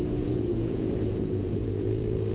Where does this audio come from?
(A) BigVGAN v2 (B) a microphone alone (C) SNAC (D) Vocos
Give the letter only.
D